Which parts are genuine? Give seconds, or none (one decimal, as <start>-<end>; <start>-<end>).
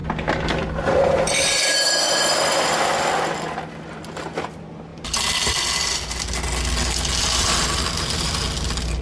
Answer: 0.0-9.0